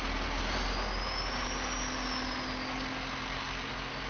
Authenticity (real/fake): real